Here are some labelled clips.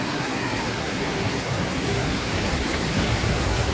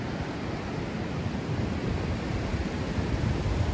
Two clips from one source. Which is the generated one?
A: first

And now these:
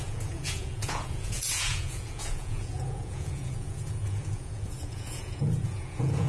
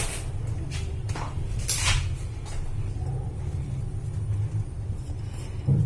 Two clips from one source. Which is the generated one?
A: first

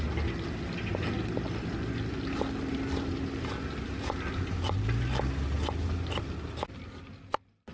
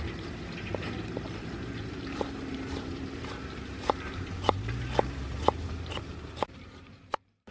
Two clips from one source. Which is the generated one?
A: second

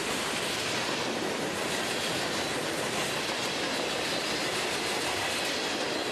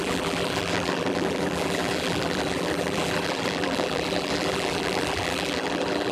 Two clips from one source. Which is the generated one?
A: second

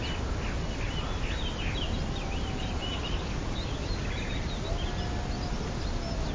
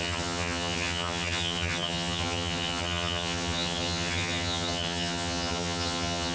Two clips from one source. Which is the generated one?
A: second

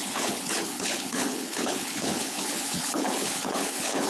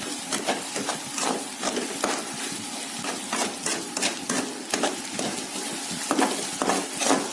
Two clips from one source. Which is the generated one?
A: first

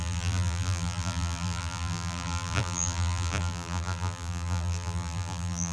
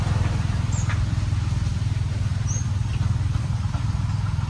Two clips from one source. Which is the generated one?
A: first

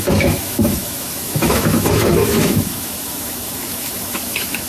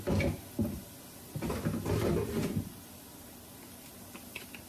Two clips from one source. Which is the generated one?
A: first